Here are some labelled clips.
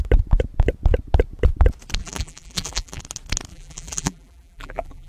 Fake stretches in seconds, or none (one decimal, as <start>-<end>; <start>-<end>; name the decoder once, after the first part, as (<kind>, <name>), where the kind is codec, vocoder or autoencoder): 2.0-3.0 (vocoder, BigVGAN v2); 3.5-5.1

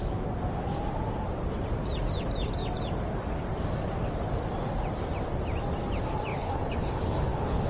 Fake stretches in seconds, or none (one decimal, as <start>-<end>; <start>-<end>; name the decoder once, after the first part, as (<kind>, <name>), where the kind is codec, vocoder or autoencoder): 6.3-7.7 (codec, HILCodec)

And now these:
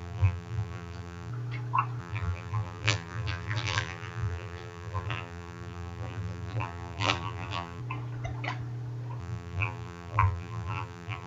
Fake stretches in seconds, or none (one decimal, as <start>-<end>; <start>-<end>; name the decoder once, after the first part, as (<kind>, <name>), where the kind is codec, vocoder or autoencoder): 0.0-1.3 (vocoder, BigVGAN v2); 2.0-7.8; 9.2-11.3

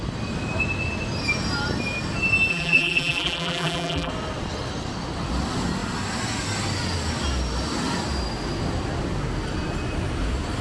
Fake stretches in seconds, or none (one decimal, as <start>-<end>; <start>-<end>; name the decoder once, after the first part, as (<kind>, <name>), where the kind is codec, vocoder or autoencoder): 2.5-4.1 (vocoder, BigVGAN v2)